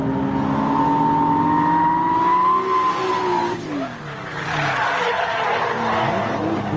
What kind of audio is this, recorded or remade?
recorded